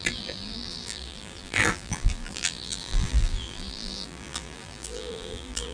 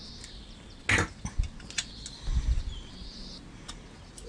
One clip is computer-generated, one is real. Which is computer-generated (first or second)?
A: first